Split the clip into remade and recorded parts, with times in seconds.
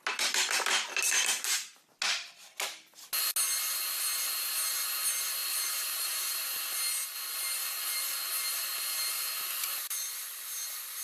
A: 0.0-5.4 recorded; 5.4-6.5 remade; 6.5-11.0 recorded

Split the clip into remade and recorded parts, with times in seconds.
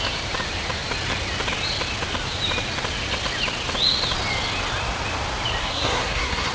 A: 0.0-5.6 recorded; 5.6-6.5 remade